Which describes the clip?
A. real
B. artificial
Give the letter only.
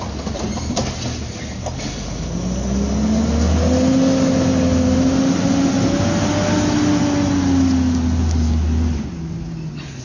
A